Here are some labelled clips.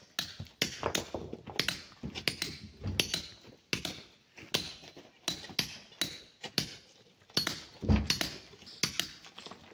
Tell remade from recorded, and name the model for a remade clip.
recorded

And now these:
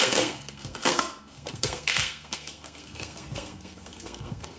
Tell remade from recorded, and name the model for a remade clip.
remade, codec, SNAC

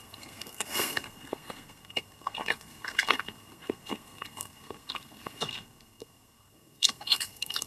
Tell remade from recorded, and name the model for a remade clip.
remade, codec, SNAC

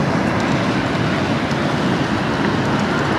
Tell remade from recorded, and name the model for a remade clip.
recorded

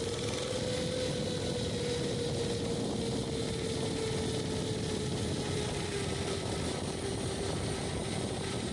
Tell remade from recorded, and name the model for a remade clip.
recorded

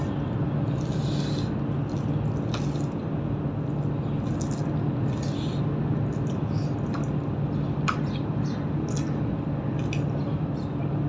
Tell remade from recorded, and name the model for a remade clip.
recorded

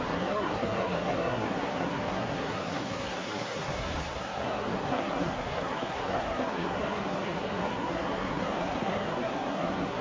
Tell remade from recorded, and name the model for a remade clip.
remade, codec, SNAC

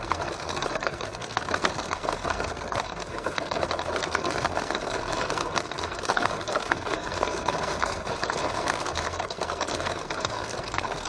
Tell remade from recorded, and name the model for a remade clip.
remade, codec, SNAC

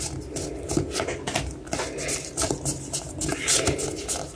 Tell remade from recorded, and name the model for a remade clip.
recorded